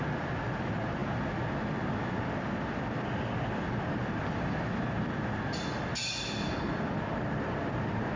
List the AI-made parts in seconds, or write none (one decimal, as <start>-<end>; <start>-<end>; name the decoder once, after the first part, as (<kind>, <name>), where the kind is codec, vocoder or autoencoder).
none